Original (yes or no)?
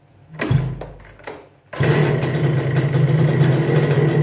yes